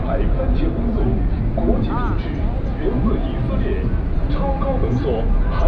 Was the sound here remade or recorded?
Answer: recorded